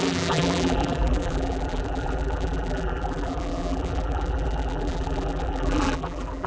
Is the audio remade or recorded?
remade